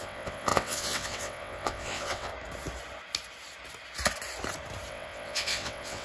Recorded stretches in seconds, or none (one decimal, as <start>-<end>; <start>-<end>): 2.3-4.9